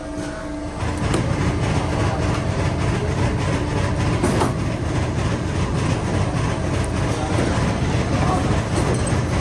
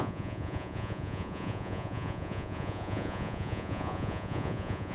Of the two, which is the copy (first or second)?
second